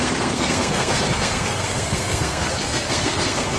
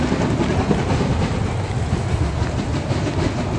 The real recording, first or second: second